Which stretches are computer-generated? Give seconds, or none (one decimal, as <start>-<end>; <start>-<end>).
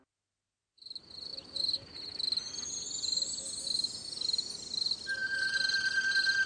none